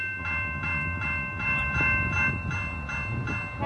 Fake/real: real